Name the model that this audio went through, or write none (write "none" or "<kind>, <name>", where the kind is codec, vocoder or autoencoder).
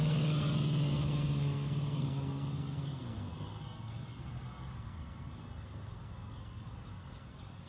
codec, SNAC